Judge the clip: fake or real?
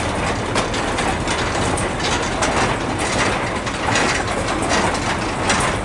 real